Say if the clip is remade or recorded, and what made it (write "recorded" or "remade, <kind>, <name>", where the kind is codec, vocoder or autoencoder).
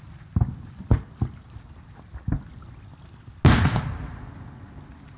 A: recorded